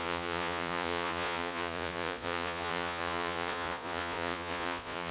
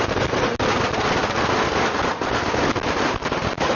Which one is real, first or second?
second